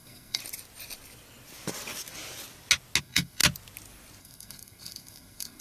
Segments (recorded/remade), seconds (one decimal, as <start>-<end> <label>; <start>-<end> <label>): 0.0-0.4 remade; 0.4-3.0 recorded; 3.0-3.4 remade; 3.4-4.2 recorded; 4.2-5.6 remade